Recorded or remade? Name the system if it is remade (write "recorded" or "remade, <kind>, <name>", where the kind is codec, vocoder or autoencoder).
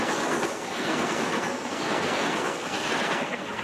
remade, codec, SNAC